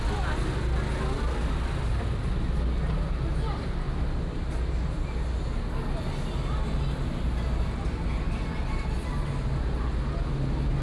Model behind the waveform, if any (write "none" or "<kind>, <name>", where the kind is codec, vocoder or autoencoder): none